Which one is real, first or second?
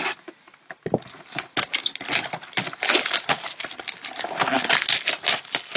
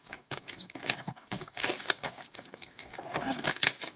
first